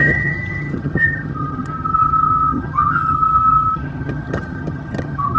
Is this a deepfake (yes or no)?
yes